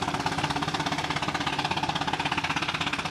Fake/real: real